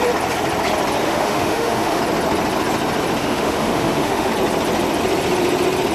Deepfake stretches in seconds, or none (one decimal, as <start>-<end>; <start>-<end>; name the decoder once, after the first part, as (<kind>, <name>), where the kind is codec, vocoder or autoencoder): 1.0-2.0 (autoencoder, DAC-VAE); 3.2-4.3